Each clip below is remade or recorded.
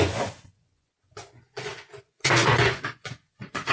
remade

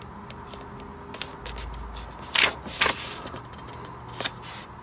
recorded